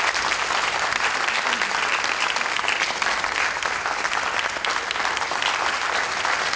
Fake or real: real